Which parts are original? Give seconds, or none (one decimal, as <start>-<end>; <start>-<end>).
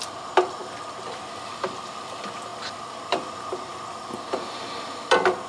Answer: 0.0-0.6; 1.5-2.5; 3.1-3.7; 4.7-5.5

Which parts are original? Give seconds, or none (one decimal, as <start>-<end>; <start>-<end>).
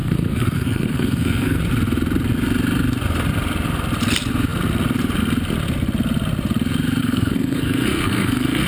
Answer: 1.6-7.0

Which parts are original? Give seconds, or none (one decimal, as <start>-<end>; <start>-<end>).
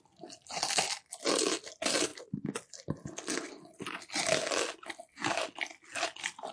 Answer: 0.0-6.5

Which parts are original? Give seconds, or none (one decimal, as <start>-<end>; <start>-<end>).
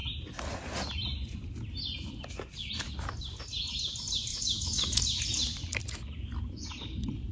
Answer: 0.0-4.3; 5.0-7.3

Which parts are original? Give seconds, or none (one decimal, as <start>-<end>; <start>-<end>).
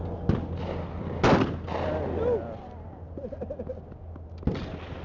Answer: 0.0-5.0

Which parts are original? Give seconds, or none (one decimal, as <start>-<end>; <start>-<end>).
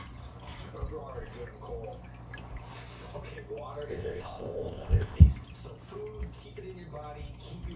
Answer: 0.0-3.9; 5.2-7.8